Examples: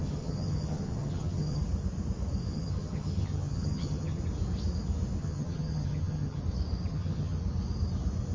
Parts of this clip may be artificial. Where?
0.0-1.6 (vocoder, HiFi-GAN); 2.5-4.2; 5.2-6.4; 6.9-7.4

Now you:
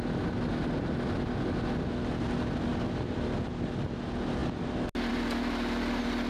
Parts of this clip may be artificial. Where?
none

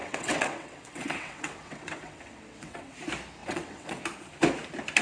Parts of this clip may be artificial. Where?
0.0-3.0 (vocoder, WaveNeXt); 3.4-4.0

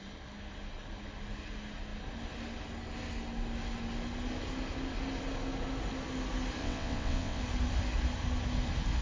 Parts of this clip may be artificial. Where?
6.6-7.4 (vocoder, WaveNeXt)